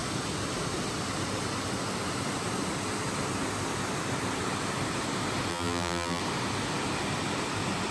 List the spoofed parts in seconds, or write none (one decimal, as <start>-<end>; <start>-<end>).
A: 5.5-6.2